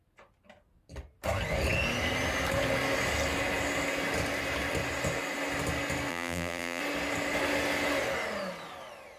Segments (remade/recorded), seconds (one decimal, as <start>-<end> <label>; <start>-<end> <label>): 0.0-6.1 recorded; 6.1-6.8 remade; 6.8-9.2 recorded